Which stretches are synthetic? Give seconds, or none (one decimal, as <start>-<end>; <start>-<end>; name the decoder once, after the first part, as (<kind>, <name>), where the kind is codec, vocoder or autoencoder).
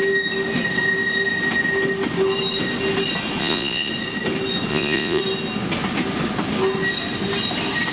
3.4-3.9 (vocoder, Vocos); 4.7-5.2